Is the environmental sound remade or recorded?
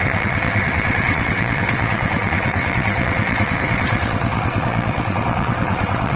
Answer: remade